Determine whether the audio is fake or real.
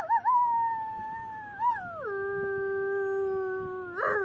real